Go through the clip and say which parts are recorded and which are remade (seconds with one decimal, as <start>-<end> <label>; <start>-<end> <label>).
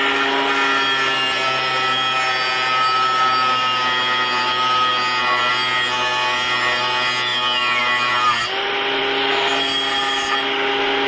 0.0-11.1 recorded